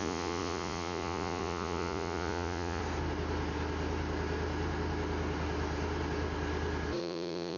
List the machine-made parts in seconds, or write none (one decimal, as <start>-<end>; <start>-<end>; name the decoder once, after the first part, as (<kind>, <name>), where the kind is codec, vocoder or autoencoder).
0.0-2.8 (vocoder, Vocos); 7.0-7.6